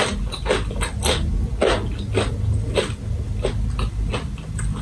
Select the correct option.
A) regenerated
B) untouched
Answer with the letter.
B